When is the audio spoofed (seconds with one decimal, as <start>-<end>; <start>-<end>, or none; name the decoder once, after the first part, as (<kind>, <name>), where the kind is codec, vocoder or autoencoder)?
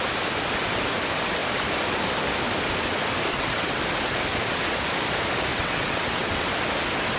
3.3-3.8 (vocoder, WaveNeXt); 5.5-6.5